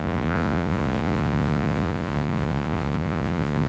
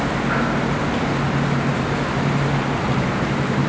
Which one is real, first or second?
second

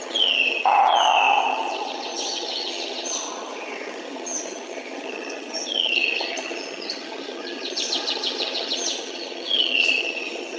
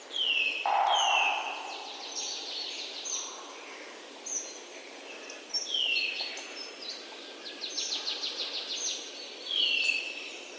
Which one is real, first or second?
second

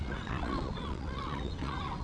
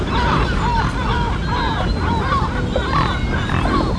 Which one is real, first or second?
second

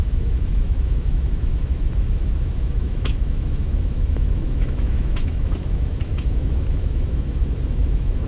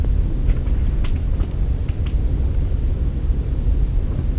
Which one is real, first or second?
second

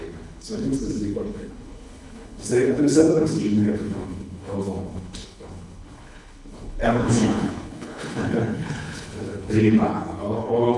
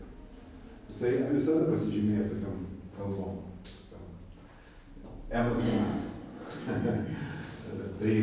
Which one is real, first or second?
second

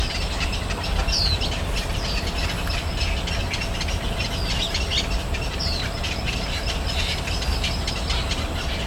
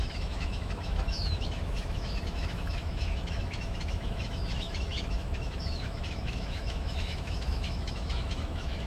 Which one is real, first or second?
first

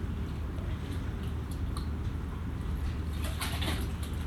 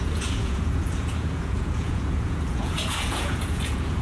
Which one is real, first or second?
first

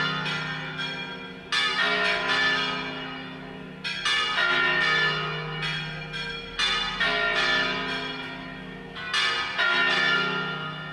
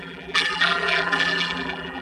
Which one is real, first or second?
first